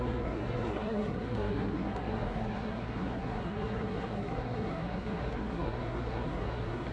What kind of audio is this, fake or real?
fake